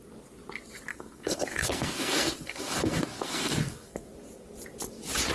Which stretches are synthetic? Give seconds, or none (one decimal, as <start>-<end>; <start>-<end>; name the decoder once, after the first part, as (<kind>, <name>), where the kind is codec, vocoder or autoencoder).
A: 0.9-4.1 (codec, SNAC)